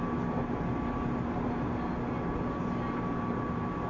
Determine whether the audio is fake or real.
real